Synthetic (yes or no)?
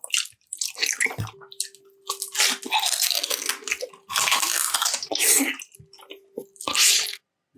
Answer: no